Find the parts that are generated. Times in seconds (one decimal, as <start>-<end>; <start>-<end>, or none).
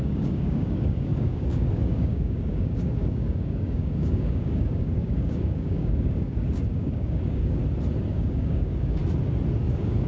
0.0-7.6; 8.1-9.0; 9.6-10.1